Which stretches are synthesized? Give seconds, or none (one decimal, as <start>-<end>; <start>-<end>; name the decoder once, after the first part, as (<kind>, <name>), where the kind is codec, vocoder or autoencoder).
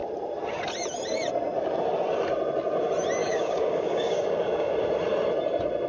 3.2-4.7 (codec, DAC)